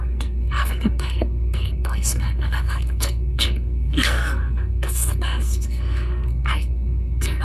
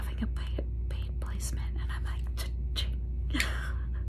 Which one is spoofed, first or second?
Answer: first